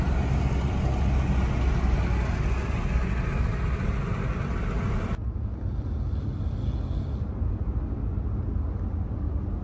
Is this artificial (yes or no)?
no